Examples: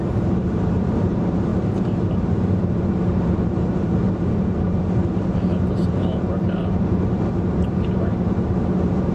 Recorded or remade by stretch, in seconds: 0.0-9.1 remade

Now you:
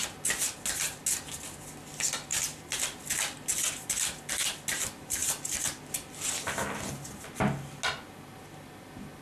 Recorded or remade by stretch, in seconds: 0.0-2.3 recorded; 2.3-3.0 remade; 3.0-9.2 recorded

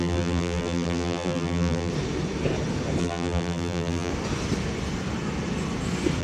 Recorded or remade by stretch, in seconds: 0.0-1.9 remade; 1.9-3.0 recorded; 3.0-4.1 remade; 4.1-6.2 recorded

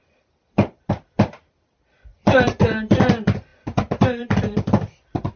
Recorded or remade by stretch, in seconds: 0.0-0.9 remade; 0.9-2.1 recorded; 2.1-2.6 remade; 2.6-3.5 recorded; 3.5-5.4 remade